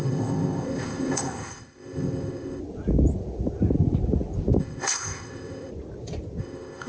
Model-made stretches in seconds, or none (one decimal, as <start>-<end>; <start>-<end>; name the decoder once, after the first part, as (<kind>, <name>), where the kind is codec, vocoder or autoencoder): 0.0-2.6 (codec, ZipCodec); 4.6-5.7; 6.4-6.9